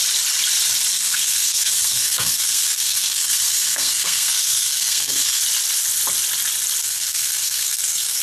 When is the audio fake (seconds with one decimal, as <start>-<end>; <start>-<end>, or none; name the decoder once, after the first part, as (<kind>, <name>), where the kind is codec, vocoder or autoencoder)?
0.9-5.4 (codec, SNAC); 6.8-8.2

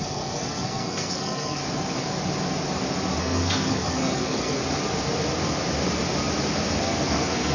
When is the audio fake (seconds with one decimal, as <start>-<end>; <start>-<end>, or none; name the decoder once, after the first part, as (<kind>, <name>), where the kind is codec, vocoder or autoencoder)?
0.0-1.6 (codec, SNAC); 3.2-4.6; 6.7-7.5

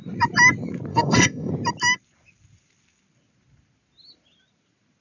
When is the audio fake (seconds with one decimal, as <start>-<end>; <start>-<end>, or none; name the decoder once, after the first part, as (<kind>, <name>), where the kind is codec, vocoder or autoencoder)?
0.9-1.5 (codec, SNAC)